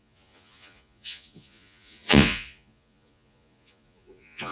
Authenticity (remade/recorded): remade